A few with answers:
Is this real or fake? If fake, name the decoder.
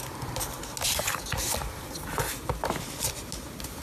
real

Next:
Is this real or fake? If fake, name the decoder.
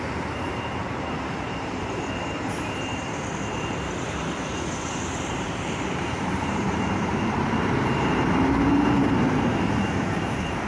fake, vocoder, BigVGAN v2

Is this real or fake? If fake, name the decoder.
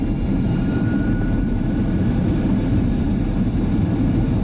fake, vocoder, BigVGAN v2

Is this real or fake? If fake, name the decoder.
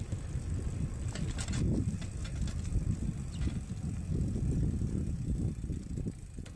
fake, vocoder, BigVGAN v2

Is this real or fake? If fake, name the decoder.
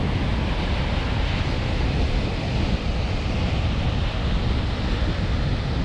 real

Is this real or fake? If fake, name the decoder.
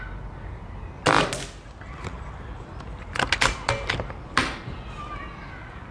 real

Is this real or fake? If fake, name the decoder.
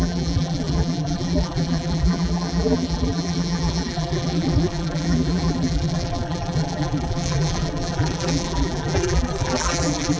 fake, vocoder, BigVGAN v2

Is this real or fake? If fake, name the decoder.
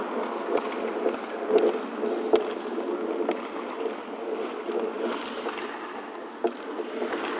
real